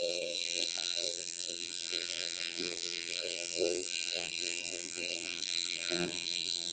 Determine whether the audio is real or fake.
fake